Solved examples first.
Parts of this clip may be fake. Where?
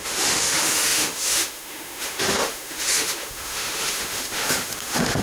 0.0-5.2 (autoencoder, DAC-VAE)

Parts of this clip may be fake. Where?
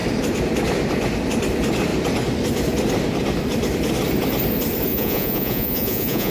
4.9-6.3 (vocoder, Vocos)